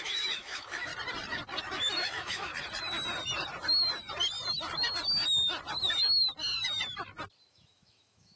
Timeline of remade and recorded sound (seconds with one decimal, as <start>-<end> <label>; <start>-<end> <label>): 0.0-0.9 remade; 0.9-1.6 recorded; 1.6-2.5 remade; 2.5-7.5 recorded; 7.5-8.4 remade